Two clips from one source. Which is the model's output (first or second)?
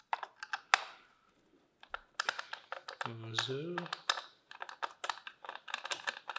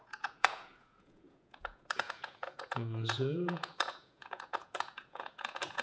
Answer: second